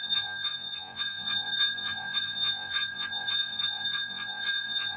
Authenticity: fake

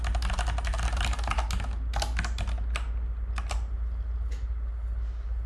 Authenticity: real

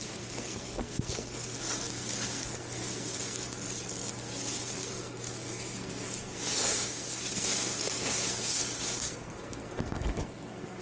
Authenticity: fake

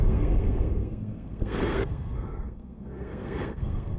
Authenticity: fake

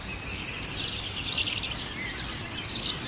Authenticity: real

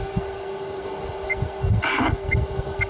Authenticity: fake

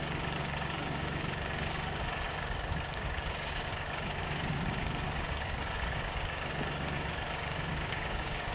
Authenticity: fake